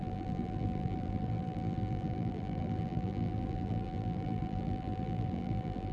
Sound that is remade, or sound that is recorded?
remade